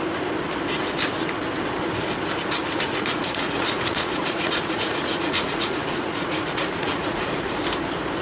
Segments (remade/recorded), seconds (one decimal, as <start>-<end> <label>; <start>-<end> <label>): 0.0-2.6 recorded; 2.6-7.5 remade; 7.5-8.2 recorded